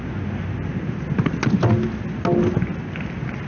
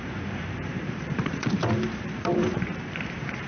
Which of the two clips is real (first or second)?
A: first